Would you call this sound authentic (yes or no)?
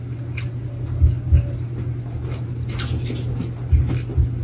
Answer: yes